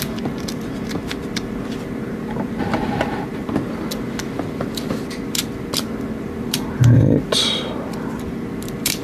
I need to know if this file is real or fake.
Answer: fake